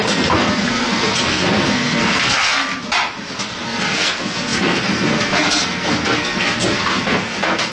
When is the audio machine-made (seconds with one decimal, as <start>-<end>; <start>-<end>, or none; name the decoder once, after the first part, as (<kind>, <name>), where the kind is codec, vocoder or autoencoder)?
0.0-2.7 (codec, SNAC); 3.3-7.7